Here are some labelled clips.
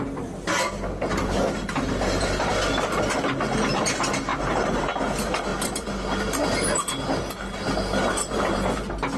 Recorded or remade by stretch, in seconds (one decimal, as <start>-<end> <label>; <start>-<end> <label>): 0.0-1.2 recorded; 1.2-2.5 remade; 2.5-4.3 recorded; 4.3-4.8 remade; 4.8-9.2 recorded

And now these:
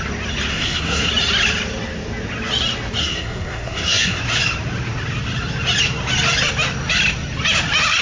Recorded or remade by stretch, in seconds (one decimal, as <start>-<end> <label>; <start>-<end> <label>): 0.0-0.5 recorded; 0.5-1.1 remade; 1.1-3.0 recorded; 3.0-4.2 remade; 4.2-8.0 recorded

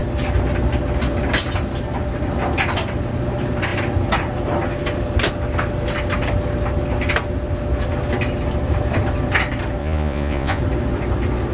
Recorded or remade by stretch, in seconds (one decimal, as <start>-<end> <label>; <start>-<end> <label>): 0.0-9.8 recorded; 9.8-10.6 remade; 10.6-11.5 recorded